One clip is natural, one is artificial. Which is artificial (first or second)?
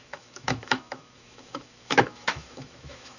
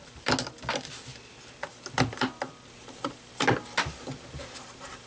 first